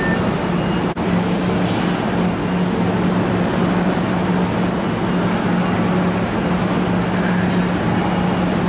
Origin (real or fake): real